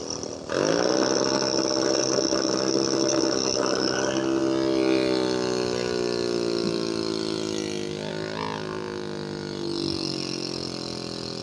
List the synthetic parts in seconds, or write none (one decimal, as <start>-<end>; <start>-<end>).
none